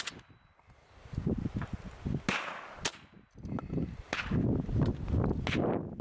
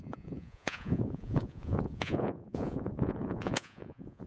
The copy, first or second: second